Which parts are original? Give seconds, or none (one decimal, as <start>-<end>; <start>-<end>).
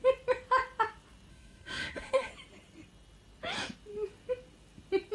0.0-1.3; 2.3-5.1